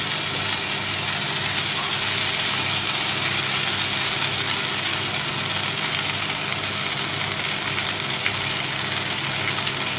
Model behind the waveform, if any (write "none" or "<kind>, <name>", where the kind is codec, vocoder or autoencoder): none